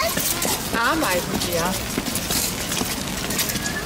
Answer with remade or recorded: recorded